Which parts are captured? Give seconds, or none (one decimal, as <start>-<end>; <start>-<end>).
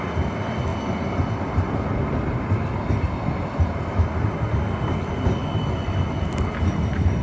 0.0-7.2